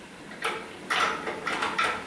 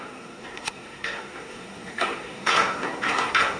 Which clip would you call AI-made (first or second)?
second